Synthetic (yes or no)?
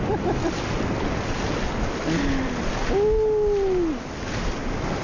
no